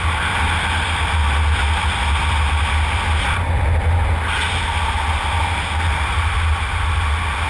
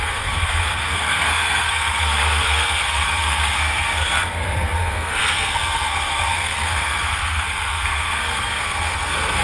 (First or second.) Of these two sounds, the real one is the first